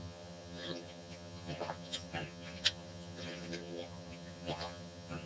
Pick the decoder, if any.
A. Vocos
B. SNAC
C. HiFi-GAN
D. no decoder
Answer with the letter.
C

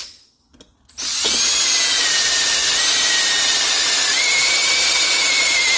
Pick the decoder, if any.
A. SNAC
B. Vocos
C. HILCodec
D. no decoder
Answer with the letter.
D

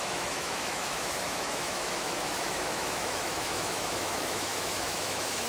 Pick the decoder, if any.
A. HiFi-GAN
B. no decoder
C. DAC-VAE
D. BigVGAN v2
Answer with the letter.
C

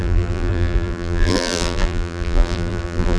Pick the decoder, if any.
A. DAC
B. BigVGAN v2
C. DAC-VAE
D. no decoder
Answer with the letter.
B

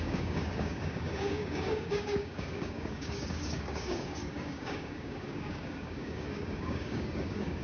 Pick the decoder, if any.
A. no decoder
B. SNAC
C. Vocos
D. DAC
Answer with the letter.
D